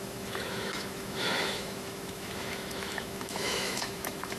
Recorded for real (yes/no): no